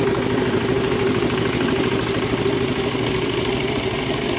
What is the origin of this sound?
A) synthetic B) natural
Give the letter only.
B